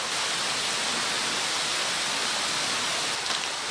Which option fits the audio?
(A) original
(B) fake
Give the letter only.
A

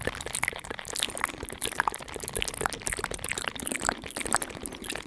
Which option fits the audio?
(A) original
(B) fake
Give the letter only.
A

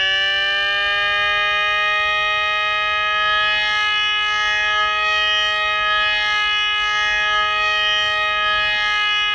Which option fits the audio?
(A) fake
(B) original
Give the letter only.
B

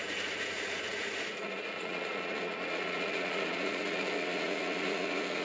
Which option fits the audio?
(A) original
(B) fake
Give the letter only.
B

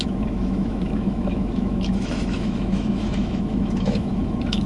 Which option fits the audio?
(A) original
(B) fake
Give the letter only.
B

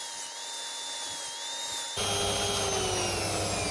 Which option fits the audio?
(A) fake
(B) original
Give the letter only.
B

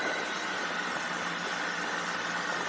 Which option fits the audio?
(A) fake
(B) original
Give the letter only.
B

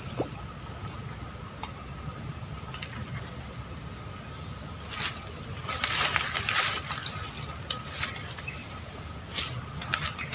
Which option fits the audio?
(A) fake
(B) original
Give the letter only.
B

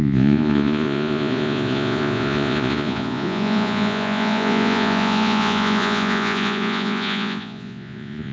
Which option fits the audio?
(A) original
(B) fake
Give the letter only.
B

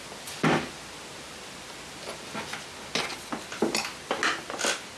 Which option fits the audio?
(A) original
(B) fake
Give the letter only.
A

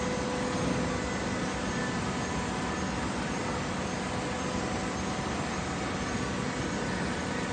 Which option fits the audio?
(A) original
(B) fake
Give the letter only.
A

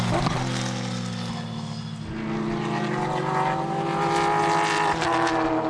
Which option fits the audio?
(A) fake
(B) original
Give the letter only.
B